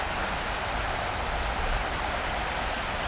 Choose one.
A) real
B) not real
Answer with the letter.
A